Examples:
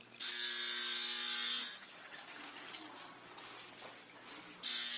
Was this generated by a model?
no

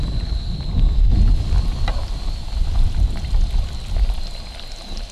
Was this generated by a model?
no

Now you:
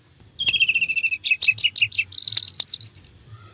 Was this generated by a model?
no